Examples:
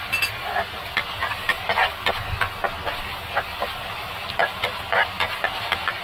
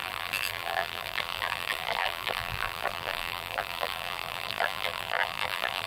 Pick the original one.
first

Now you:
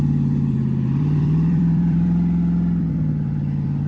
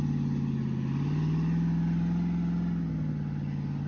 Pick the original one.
second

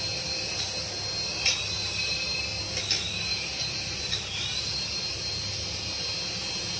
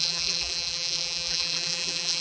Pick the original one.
first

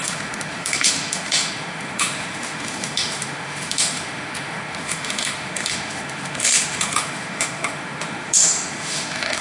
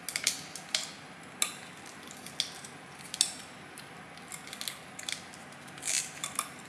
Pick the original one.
second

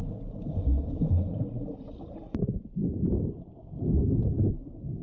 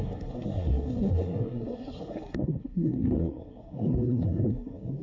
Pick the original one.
first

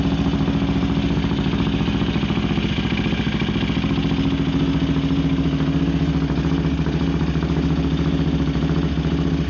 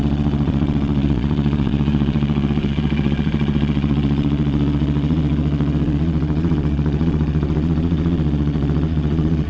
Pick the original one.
first